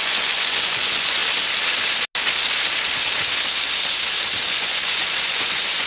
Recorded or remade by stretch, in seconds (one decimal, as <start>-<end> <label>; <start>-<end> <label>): 0.0-1.2 remade; 1.2-4.5 recorded; 4.5-5.9 remade